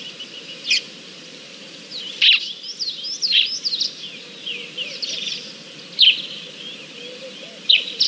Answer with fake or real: real